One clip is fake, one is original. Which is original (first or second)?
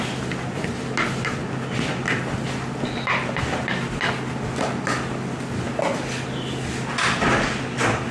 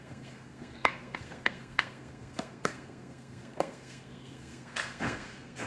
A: first